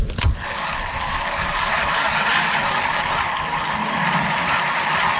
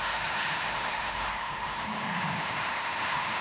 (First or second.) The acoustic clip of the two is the first